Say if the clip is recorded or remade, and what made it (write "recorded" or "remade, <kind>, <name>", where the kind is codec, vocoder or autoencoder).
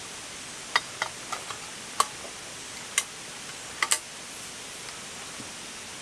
recorded